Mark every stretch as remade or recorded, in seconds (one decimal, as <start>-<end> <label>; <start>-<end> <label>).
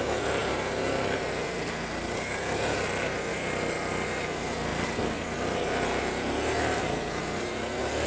0.0-8.1 recorded